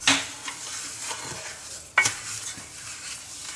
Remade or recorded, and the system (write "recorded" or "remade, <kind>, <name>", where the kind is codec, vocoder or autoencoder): recorded